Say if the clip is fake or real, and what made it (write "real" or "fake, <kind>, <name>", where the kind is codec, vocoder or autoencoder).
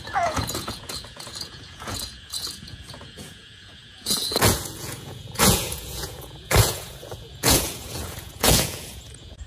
fake, vocoder, Vocos